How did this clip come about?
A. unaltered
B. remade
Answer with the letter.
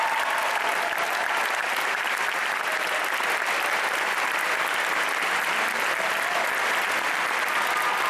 A